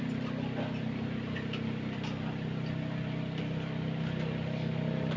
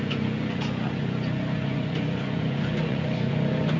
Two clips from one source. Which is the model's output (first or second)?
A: second